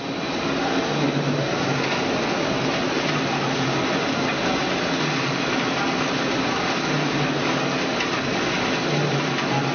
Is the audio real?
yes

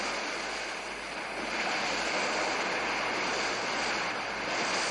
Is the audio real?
yes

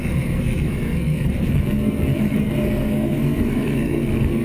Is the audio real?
no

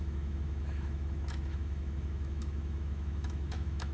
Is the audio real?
no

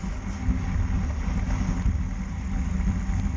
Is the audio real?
yes